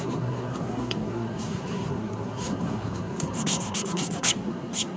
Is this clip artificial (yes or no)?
yes